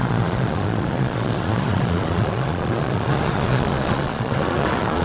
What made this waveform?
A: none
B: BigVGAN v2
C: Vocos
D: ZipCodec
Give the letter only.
C